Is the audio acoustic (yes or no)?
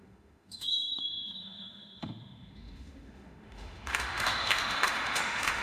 no